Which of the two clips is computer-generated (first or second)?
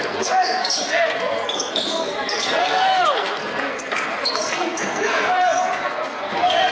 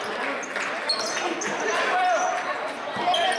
first